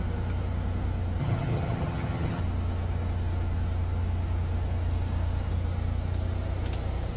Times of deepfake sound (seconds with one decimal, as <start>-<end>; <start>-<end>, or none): 1.2-2.4